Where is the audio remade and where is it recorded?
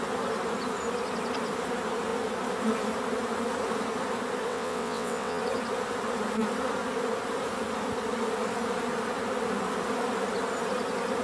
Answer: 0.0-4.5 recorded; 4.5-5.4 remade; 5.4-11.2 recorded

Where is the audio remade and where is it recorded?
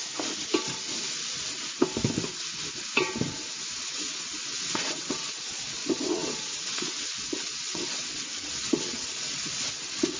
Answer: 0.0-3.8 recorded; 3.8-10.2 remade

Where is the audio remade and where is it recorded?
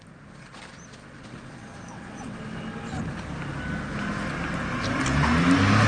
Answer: 0.0-1.0 recorded; 1.0-2.4 remade; 2.4-5.9 recorded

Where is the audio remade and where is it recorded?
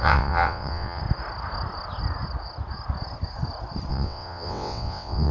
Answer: 0.0-1.0 remade; 1.0-3.9 recorded; 3.9-5.3 remade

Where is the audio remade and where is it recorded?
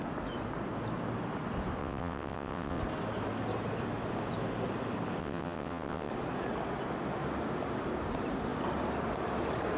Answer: 0.0-1.8 recorded; 1.8-2.8 remade; 2.8-5.2 recorded; 5.2-6.1 remade; 6.1-9.8 recorded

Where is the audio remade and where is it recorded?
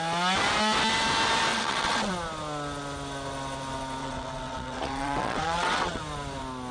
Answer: 0.0-1.5 recorded; 1.5-2.1 remade; 2.1-4.0 recorded; 4.0-6.0 remade; 6.0-6.7 recorded